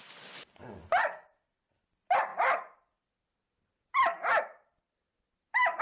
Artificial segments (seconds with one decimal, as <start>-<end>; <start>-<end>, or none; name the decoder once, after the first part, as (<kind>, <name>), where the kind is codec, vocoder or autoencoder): none